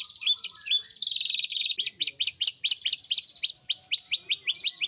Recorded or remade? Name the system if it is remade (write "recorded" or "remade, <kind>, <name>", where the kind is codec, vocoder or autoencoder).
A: remade, vocoder, BigVGAN v2